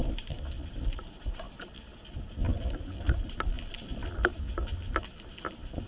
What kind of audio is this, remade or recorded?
recorded